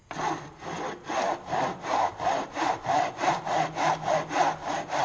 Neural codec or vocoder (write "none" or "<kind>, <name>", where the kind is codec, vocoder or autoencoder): none